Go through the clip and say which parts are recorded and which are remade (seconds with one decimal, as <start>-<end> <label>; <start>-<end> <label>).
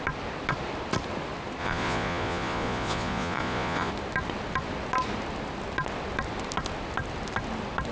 0.0-1.6 recorded; 1.6-3.9 remade; 3.9-7.9 recorded